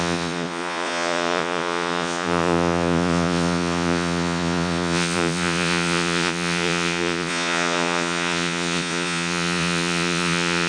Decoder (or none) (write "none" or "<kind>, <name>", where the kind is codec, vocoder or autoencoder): vocoder, Vocos